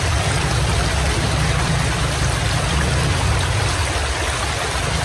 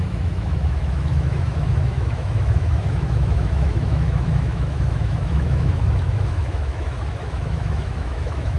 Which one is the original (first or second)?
first